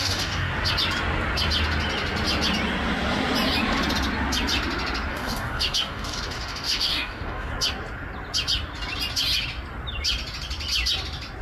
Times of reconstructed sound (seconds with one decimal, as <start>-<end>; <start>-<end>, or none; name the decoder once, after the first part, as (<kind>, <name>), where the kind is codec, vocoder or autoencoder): 0.0-0.5 (codec, DAC); 5.1-7.5